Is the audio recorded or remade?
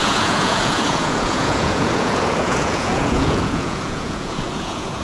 remade